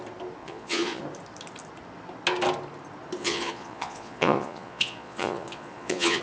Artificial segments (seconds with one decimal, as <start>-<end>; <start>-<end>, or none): 0.4-1.0; 3.2-6.2